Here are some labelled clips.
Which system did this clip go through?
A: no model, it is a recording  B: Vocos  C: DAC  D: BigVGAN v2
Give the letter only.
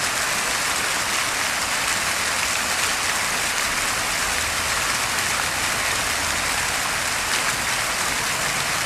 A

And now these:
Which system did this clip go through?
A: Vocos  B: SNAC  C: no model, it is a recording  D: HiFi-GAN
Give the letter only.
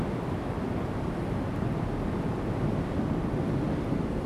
C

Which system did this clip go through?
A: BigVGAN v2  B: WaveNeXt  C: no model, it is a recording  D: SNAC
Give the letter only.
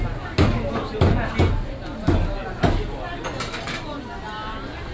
C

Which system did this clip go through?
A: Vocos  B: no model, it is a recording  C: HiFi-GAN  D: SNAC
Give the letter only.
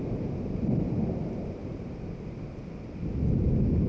B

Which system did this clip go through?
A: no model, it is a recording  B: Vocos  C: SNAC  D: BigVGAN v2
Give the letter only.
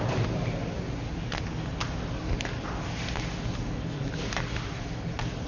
A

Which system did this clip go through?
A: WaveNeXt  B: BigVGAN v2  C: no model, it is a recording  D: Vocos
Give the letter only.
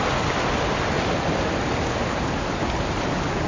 C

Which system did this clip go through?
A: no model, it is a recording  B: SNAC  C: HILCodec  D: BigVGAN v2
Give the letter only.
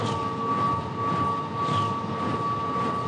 A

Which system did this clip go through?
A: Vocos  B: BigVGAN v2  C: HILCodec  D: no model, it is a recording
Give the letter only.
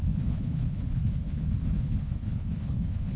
C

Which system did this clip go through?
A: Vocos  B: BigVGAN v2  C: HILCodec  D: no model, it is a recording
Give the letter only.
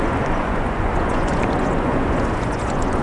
A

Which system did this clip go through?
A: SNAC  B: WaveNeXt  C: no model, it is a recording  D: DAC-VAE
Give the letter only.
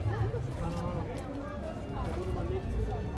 C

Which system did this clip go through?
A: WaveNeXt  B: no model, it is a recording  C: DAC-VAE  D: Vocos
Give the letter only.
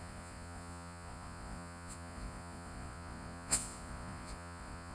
D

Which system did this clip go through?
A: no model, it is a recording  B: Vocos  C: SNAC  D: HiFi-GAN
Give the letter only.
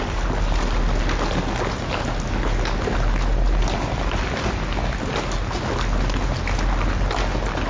A